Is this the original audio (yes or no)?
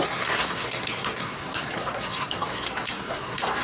no